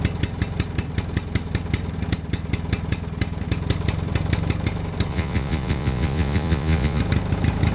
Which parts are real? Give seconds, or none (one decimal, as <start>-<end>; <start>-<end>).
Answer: 0.0-5.1; 7.0-7.7

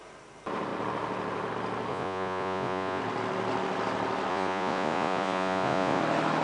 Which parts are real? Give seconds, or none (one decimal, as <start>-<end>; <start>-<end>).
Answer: 0.0-1.9; 3.0-4.3; 6.0-6.4

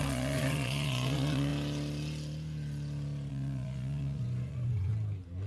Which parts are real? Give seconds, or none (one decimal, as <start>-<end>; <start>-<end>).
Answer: 1.5-3.3; 4.9-5.5

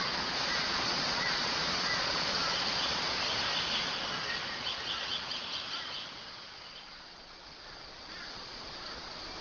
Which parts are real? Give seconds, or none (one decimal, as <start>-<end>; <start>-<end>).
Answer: 3.2-3.8